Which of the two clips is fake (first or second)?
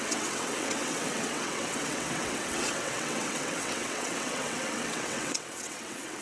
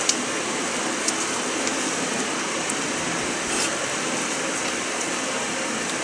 first